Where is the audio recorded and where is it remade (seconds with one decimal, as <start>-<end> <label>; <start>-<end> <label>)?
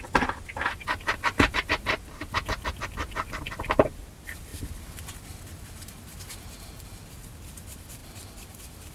0.0-4.5 remade; 4.5-6.8 recorded; 6.8-8.9 remade